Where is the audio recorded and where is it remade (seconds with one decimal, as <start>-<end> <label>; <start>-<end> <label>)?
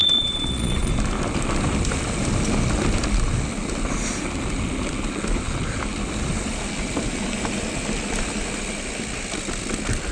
0.0-0.9 remade; 0.9-10.1 recorded